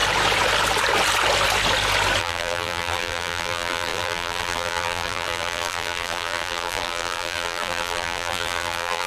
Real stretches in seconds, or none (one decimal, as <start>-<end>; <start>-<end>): 0.0-2.2